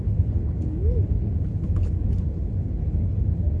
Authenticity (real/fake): fake